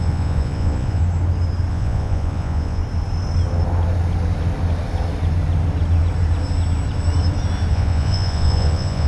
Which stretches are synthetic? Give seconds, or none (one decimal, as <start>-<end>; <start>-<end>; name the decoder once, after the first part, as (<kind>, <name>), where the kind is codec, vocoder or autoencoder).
0.0-1.0 (vocoder, Vocos); 1.7-2.8; 7.7-9.1